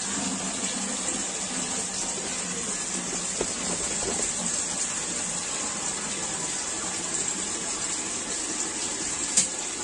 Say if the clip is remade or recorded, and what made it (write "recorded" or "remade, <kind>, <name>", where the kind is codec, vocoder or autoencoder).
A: recorded